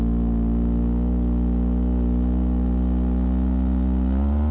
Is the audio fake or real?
real